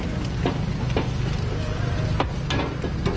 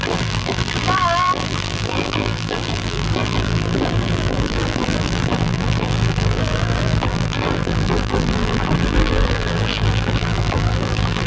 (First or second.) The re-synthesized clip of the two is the second